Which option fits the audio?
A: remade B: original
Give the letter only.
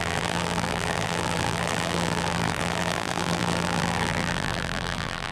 A